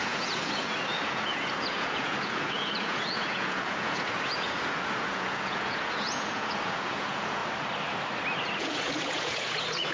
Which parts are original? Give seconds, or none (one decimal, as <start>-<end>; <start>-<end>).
7.4-8.6